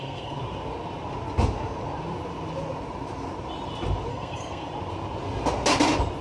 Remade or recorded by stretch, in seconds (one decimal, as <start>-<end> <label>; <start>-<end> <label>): 0.0-0.4 remade; 0.4-4.1 recorded; 4.1-4.7 remade; 4.7-6.2 recorded